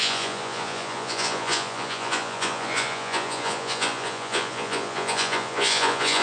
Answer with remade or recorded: remade